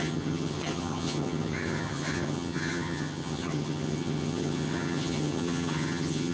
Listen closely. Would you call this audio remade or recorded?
remade